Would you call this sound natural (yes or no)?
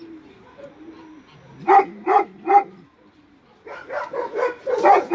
yes